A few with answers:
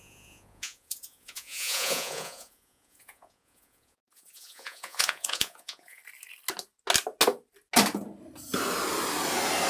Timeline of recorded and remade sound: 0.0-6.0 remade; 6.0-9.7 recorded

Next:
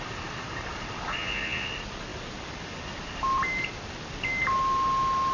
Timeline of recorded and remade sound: 0.0-1.2 recorded; 1.2-1.7 remade; 1.7-5.3 recorded